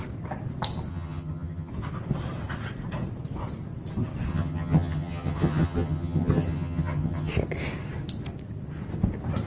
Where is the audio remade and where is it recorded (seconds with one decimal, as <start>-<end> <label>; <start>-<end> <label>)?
0.0-0.9 recorded; 0.9-1.7 remade; 1.7-4.3 recorded; 4.3-7.3 remade; 7.3-9.5 recorded